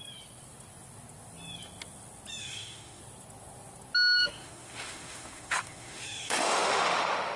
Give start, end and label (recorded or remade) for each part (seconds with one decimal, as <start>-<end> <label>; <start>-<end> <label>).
0.0-2.4 recorded; 2.4-3.0 remade; 3.0-4.2 recorded; 4.2-7.4 remade